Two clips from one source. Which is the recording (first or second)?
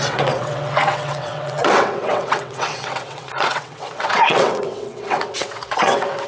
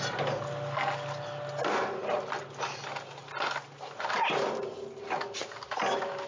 second